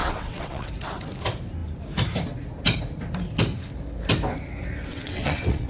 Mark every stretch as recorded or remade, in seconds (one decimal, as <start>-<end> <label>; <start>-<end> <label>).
0.0-0.7 remade; 0.7-4.9 recorded; 4.9-5.7 remade